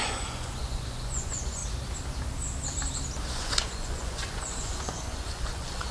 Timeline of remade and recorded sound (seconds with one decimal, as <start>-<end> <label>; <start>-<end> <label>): 0.0-1.6 remade; 1.6-3.3 recorded; 3.3-5.9 remade

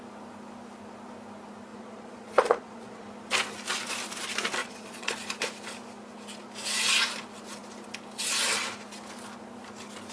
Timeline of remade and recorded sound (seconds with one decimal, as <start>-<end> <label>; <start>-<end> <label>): 0.0-1.7 recorded; 1.7-3.1 remade; 3.1-4.6 recorded; 4.6-5.1 remade; 5.1-10.1 recorded

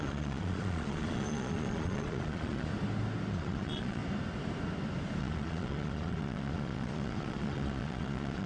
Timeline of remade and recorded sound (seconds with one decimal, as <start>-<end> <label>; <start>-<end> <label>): 0.0-2.7 remade; 2.7-3.3 recorded; 3.3-4.0 remade; 4.0-5.2 recorded; 5.2-8.5 remade

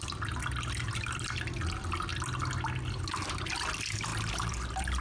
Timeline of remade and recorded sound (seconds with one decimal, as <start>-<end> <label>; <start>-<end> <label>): 0.0-5.0 recorded

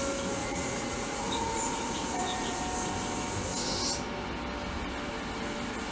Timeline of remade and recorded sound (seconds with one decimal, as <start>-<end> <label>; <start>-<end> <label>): 0.0-0.4 recorded; 0.4-2.6 remade; 2.6-5.9 recorded

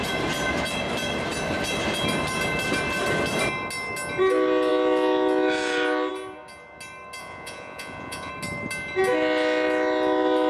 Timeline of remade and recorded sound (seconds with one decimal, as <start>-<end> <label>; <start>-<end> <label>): 0.0-7.2 recorded; 7.2-8.3 remade; 8.3-10.5 recorded

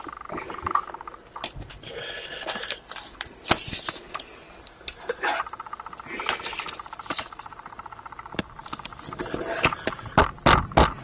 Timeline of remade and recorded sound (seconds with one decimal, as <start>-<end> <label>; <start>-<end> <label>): 0.0-11.0 recorded